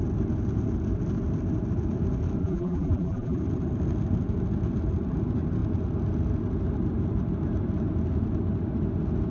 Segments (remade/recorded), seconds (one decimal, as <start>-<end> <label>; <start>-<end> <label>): 0.0-2.4 recorded; 2.4-3.4 remade; 3.4-9.3 recorded